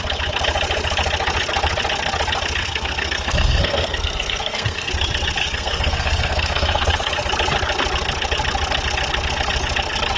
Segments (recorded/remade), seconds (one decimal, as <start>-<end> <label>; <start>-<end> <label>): 0.0-2.6 recorded; 2.6-4.9 remade; 4.9-5.4 recorded; 5.4-7.1 remade; 7.1-10.2 recorded